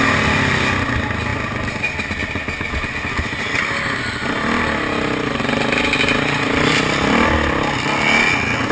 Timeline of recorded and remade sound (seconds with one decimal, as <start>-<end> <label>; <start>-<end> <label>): 0.0-8.7 recorded